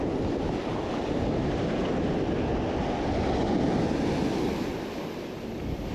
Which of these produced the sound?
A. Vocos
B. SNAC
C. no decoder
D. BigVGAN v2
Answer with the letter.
C